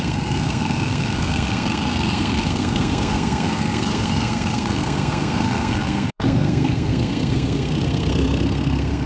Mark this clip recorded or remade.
remade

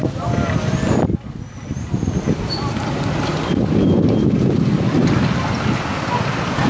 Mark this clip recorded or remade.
recorded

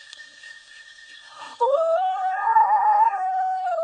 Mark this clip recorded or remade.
remade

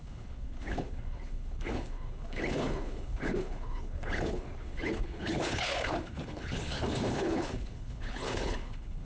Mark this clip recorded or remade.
remade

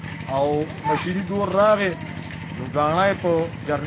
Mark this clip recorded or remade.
remade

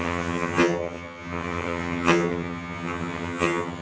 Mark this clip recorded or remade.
remade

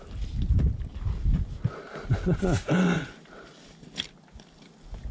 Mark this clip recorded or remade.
recorded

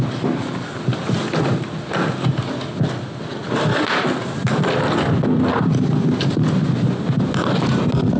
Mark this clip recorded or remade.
recorded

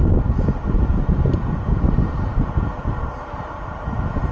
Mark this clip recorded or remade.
recorded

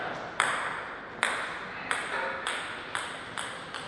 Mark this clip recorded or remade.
recorded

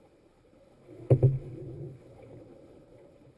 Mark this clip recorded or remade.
remade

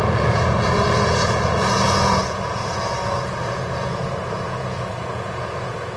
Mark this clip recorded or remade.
remade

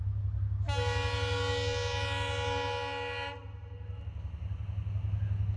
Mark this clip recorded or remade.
recorded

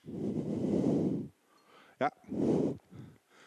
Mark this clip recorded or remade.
recorded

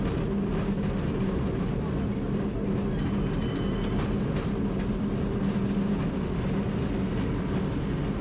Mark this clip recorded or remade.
recorded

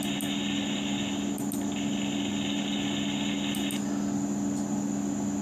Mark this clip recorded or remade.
recorded